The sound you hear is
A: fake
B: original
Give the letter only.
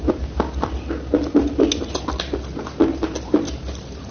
B